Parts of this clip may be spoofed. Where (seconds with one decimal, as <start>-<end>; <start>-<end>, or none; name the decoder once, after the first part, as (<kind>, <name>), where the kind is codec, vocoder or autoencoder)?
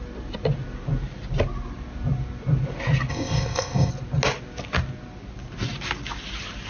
3.1-3.9 (codec, ZipCodec)